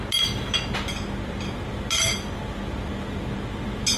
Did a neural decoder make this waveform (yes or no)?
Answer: no